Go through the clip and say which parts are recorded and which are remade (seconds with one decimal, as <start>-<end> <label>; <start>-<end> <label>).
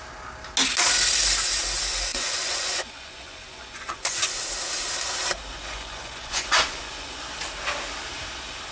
0.0-2.1 recorded; 2.1-4.3 remade; 4.3-5.5 recorded; 5.5-7.2 remade; 7.2-8.7 recorded